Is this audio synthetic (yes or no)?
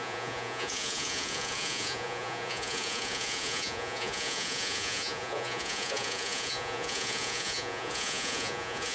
yes